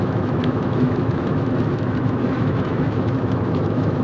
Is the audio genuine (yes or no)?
no